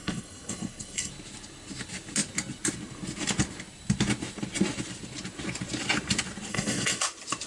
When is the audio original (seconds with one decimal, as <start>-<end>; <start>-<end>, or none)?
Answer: 1.1-6.5; 7.0-7.5